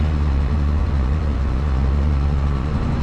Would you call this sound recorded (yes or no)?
no